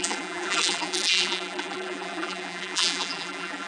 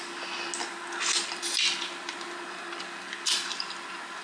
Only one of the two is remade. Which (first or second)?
first